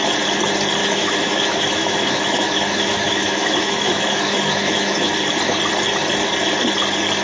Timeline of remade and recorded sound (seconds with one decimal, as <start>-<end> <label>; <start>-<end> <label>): 0.0-0.8 recorded; 0.8-5.1 remade; 5.1-7.2 recorded